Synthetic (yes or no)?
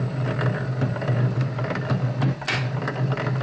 no